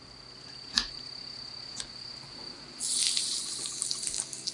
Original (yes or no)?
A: yes